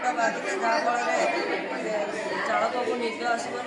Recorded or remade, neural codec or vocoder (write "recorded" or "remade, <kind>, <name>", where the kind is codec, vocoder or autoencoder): recorded